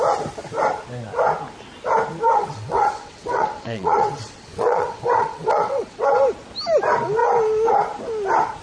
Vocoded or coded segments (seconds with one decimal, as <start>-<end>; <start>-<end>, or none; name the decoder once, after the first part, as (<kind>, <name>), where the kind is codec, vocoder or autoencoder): 2.4-6.0 (vocoder, WaveNeXt)